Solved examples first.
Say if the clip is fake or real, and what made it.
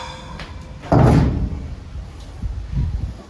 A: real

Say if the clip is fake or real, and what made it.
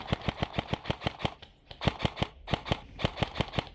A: real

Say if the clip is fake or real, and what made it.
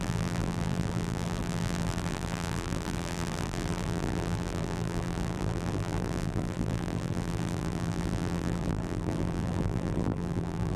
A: fake, vocoder, BigVGAN v2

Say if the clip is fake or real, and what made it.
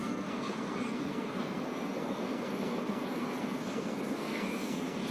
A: fake, codec, SNAC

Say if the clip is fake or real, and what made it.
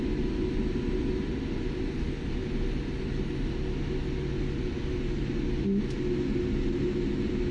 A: real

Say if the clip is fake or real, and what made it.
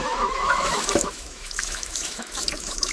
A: fake, autoencoder, DAC-VAE